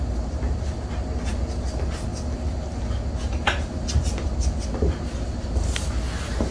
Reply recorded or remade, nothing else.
recorded